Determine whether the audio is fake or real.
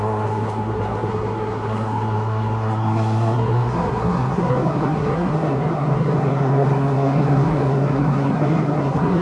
fake